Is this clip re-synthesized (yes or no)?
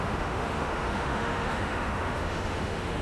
yes